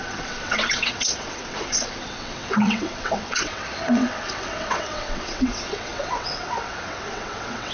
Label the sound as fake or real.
fake